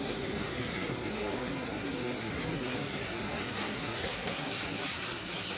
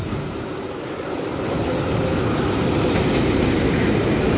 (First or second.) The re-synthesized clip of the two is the first